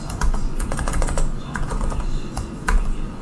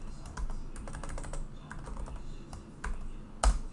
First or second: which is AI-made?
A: first